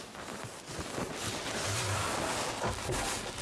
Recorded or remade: recorded